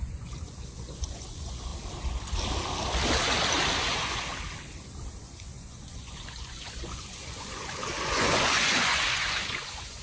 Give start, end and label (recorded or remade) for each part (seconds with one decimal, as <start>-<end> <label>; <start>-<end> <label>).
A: 0.0-1.7 remade; 1.7-3.8 recorded; 3.8-4.3 remade; 4.3-5.2 recorded; 5.2-10.0 remade